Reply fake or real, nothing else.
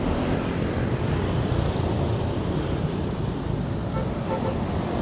fake